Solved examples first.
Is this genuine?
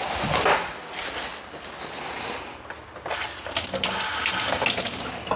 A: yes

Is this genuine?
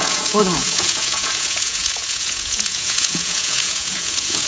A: no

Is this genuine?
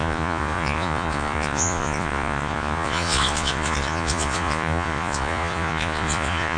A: no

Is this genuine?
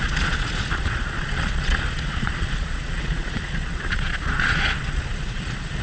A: no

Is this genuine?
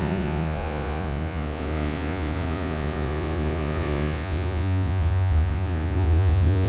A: no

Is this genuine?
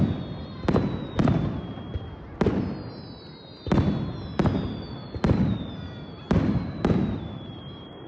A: yes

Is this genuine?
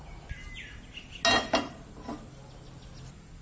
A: yes